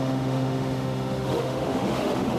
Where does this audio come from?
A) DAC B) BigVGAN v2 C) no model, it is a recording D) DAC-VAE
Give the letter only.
D